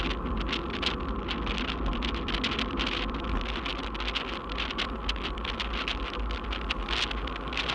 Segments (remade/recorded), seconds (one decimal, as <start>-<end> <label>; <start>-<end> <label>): 0.0-7.7 recorded